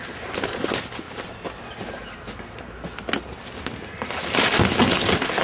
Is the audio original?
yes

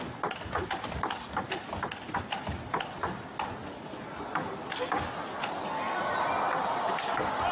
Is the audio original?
yes